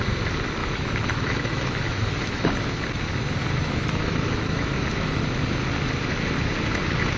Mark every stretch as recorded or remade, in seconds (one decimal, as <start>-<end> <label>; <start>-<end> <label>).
0.0-0.6 recorded; 0.6-2.7 remade; 2.7-3.4 recorded; 3.4-5.2 remade; 5.2-7.2 recorded